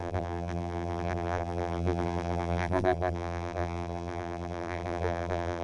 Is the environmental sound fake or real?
fake